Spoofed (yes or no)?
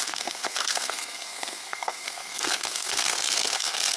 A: yes